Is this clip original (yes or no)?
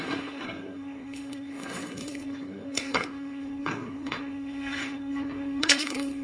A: no